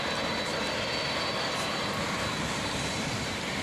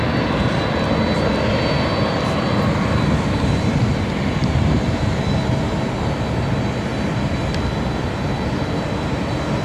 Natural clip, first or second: second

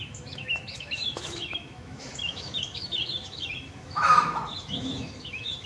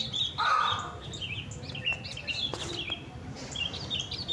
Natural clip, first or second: second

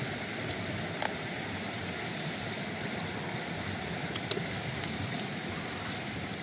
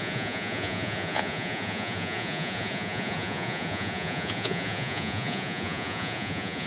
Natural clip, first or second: first